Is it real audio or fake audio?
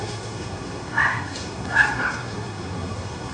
fake